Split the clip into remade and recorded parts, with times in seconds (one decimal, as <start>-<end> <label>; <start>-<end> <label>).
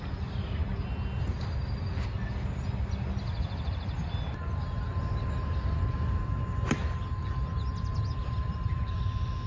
0.0-7.9 recorded; 7.9-8.9 remade; 8.9-9.5 recorded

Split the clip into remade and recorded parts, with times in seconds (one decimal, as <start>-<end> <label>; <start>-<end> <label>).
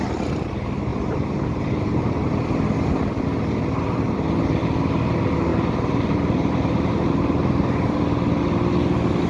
0.0-0.9 recorded; 0.9-2.3 remade; 2.3-5.5 recorded; 5.5-8.0 remade; 8.0-9.3 recorded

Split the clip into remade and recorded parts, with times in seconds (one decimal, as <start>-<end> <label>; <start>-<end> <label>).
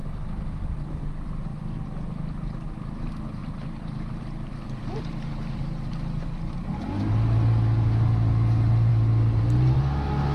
0.0-0.9 remade; 0.9-3.4 recorded; 3.4-5.9 remade; 5.9-10.3 recorded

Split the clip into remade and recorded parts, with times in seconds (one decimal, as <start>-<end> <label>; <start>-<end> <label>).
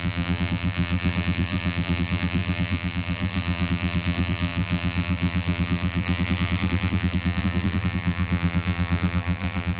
0.0-9.8 remade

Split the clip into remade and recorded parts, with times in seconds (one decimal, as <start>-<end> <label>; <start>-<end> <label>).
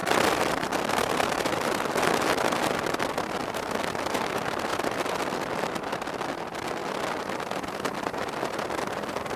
0.0-2.0 remade; 2.0-4.7 recorded; 4.7-5.6 remade; 5.6-9.4 recorded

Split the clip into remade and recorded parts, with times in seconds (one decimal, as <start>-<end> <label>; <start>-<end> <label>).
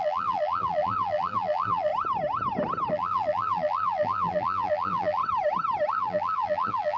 0.0-1.9 remade; 1.9-2.9 recorded; 2.9-5.2 remade; 5.2-5.9 recorded; 5.9-7.0 remade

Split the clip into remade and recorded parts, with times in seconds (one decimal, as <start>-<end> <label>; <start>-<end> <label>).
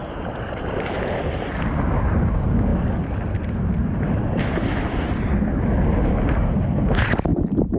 0.0-2.7 recorded; 2.7-5.0 remade; 5.0-7.3 recorded; 7.3-7.8 remade